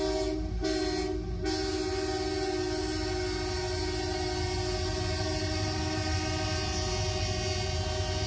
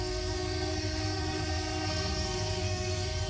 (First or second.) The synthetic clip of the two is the second